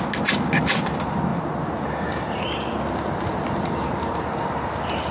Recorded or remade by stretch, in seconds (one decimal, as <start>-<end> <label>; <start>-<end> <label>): 0.0-5.1 recorded